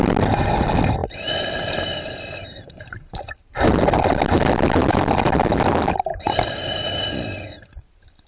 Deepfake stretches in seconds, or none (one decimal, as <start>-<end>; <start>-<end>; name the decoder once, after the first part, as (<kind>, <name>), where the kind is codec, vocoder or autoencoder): 2.4-3.5 (vocoder, BigVGAN v2); 6.1-6.9